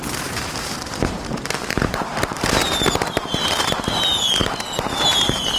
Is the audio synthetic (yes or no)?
yes